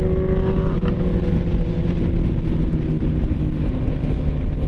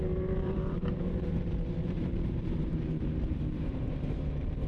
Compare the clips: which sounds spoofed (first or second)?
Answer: second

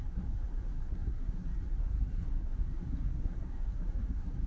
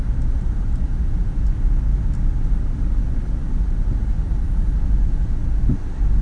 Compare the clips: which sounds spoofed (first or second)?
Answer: first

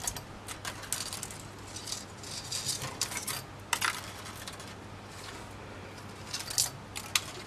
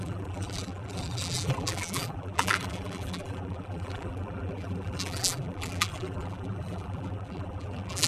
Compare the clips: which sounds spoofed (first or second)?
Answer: second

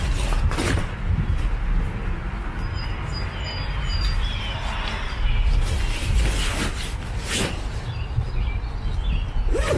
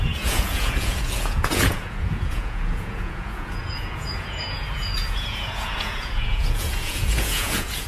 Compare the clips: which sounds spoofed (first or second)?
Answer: second